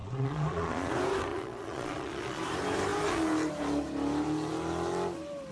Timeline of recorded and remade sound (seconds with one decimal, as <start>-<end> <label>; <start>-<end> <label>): 0.0-0.9 remade; 0.9-1.3 recorded; 1.3-2.4 remade; 2.4-5.5 recorded